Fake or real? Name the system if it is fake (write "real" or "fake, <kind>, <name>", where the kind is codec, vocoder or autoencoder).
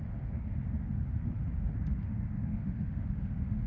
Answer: fake, autoencoder, DAC-VAE